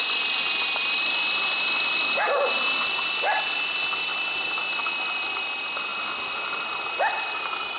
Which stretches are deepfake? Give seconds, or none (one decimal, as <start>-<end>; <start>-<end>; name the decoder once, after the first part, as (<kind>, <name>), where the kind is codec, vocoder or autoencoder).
none